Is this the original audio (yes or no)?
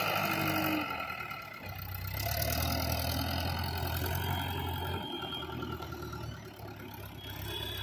yes